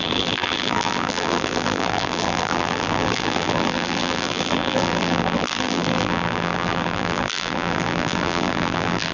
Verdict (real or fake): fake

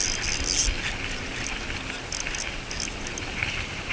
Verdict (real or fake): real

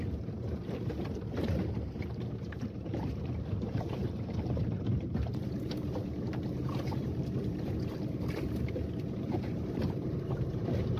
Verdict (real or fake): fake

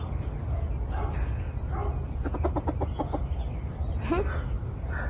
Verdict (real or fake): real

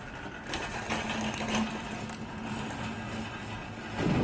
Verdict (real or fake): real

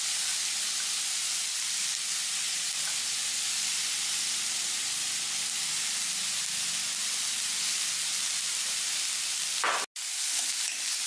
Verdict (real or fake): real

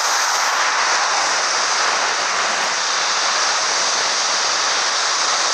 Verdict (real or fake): real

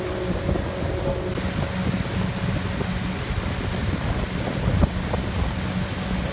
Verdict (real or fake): real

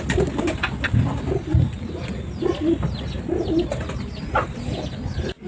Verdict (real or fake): real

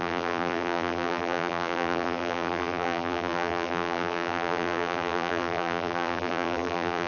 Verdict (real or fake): fake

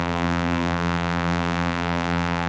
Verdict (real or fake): fake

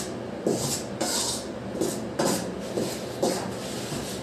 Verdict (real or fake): real